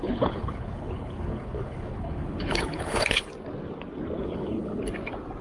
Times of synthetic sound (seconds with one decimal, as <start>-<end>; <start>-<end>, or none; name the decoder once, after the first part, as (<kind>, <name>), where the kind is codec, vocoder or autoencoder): 0.0-3.2 (codec, HILCodec); 4.2-4.8